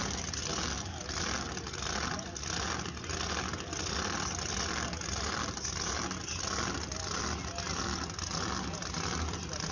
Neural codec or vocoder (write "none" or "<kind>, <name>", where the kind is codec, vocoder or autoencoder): none